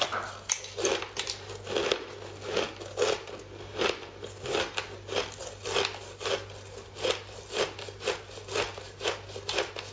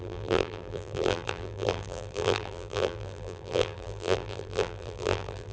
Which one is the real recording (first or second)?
first